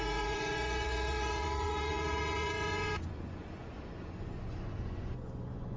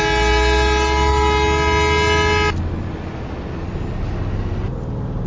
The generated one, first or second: first